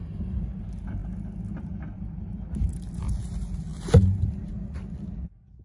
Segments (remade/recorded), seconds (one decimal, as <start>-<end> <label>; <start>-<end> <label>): 0.0-5.6 recorded